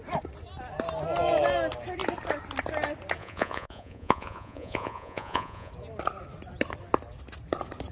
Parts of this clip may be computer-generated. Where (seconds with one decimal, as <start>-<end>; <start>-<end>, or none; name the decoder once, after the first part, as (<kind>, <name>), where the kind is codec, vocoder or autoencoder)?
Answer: 3.2-5.7 (vocoder, Vocos)